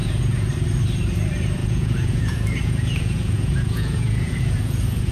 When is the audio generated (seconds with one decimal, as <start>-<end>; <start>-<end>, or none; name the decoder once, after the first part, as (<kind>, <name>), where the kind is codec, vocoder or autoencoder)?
0.0-0.5 (vocoder, Vocos); 1.6-5.1